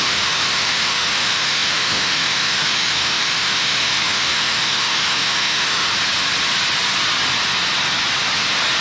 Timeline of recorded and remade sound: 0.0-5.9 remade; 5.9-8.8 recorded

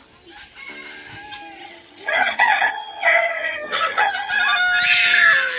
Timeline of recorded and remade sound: 0.0-1.6 recorded; 1.6-4.3 remade; 4.3-5.6 recorded

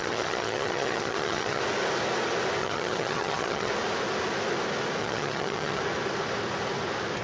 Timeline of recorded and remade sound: 0.0-1.6 remade; 1.6-2.6 recorded; 2.6-3.7 remade; 3.7-5.0 recorded; 5.0-5.8 remade; 5.8-7.2 recorded

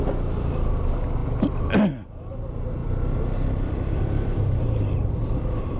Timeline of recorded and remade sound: 0.0-5.8 recorded

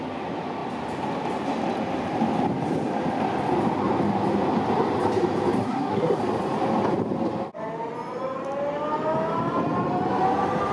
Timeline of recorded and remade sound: 0.0-5.6 recorded; 5.6-6.2 remade; 6.2-10.7 recorded

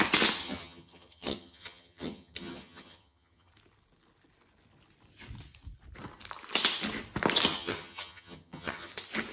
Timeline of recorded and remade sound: 0.0-0.4 recorded; 0.4-3.5 remade; 3.5-7.5 recorded; 7.5-8.9 remade; 8.9-9.3 recorded

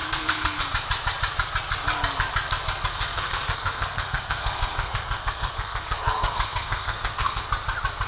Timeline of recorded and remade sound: 0.0-0.6 remade; 0.6-2.9 recorded; 2.9-7.4 remade; 7.4-8.1 recorded